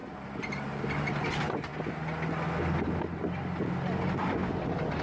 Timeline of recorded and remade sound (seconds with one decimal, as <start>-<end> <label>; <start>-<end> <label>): 0.0-1.1 recorded; 1.1-1.7 remade; 1.7-5.0 recorded